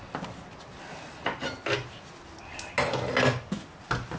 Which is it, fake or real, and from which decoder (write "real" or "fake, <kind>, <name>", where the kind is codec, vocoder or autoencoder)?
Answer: real